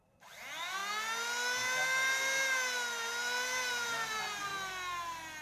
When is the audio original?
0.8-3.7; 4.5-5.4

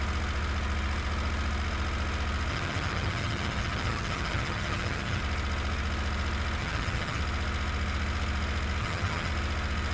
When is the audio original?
0.0-2.5; 5.2-6.6; 7.2-8.8; 9.3-9.9

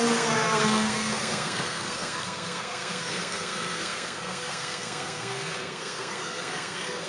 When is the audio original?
none

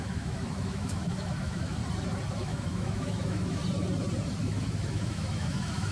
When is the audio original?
1.8-2.3; 3.6-4.4